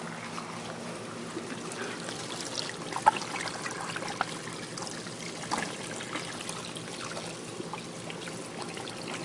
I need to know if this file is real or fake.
real